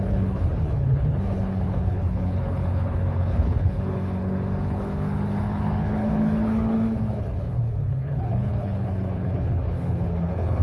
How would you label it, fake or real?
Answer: fake